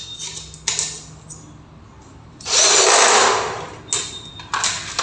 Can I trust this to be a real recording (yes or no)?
yes